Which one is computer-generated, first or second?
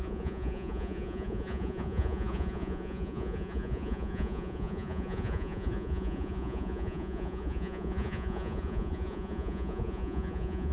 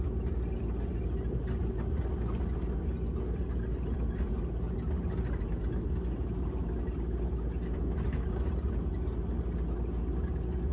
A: first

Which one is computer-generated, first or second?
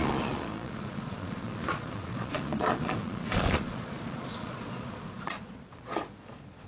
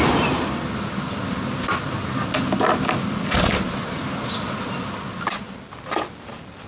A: first